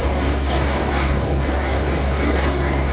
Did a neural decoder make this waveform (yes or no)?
yes